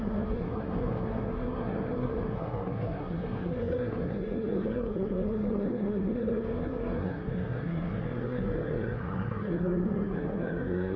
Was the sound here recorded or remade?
remade